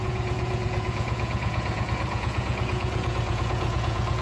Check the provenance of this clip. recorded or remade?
remade